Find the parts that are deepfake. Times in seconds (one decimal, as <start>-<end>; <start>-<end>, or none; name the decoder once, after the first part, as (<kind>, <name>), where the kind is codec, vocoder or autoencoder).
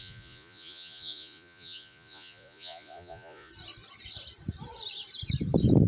0.0-3.5 (vocoder, Vocos)